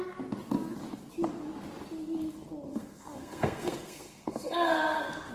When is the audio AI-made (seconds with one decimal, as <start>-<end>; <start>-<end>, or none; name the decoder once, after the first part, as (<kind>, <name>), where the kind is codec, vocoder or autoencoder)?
2.7-5.3 (codec, SNAC)